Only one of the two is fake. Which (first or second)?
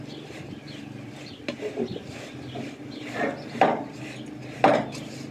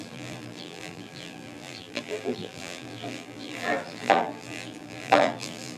second